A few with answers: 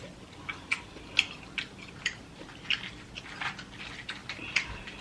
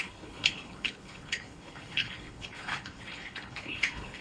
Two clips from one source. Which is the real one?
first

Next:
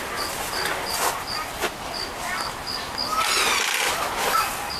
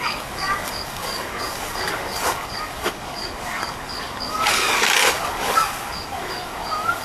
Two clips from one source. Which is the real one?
first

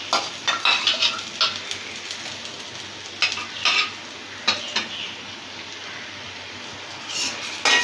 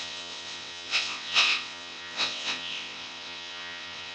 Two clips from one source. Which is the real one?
first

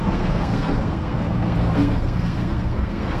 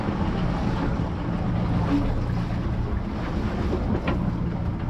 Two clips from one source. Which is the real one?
second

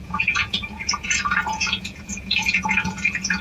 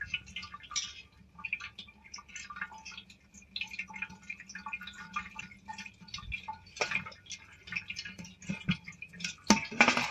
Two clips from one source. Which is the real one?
second